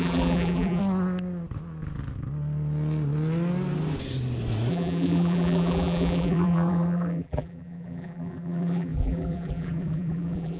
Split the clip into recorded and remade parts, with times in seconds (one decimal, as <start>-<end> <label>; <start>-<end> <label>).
0.0-0.8 remade; 0.8-4.7 recorded; 4.7-10.6 remade

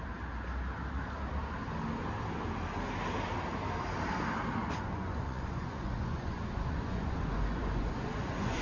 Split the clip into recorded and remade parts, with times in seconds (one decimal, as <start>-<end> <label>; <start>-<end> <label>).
0.0-4.6 recorded; 4.6-8.6 remade